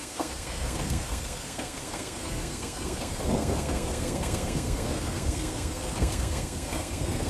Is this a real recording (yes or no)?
no